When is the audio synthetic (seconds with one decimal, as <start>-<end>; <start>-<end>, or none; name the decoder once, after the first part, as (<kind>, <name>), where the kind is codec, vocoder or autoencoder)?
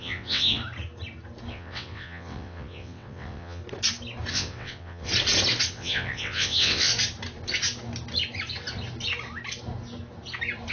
0.0-0.6 (vocoder, WaveNeXt); 1.5-3.6; 4.3-5.1; 5.7-6.9